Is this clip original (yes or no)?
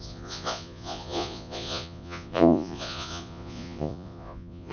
no